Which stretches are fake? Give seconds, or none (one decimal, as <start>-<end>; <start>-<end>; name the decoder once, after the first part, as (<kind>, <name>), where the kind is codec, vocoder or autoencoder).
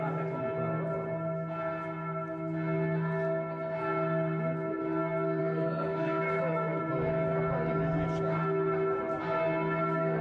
5.4-6.8 (codec, SNAC)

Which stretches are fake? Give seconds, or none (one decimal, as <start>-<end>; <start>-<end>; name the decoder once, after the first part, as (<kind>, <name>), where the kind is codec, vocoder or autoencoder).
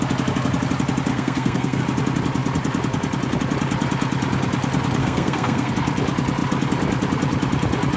1.1-1.8 (codec, SNAC); 5.0-5.7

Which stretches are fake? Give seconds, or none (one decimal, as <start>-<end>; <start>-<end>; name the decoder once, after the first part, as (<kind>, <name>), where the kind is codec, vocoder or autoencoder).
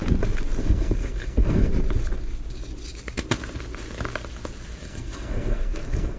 0.6-1.7 (codec, SNAC); 4.8-6.2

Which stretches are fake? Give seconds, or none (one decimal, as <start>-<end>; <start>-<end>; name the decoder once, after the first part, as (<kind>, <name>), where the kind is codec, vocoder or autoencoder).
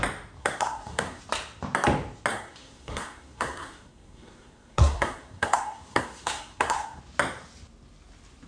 0.4-1.2 (codec, SNAC); 2.3-7.0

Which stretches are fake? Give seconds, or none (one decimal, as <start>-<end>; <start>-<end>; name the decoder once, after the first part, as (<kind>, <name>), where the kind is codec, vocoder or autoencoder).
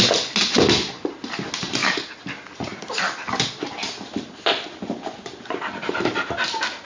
none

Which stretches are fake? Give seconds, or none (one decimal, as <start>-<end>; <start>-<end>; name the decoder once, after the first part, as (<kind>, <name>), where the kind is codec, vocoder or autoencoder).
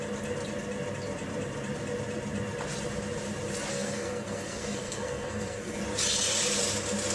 3.7-5.8 (codec, SNAC)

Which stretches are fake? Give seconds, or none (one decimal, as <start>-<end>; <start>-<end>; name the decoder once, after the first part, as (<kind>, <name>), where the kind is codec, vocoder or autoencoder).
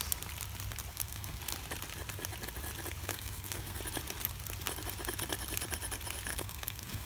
0.9-1.4 (codec, SNAC); 3.0-3.8; 6.3-7.1